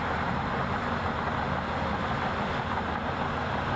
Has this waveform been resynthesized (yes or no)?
no